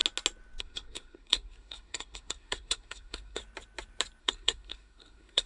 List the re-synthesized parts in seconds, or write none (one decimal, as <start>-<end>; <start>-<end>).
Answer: 0.6-3.4; 4.2-5.5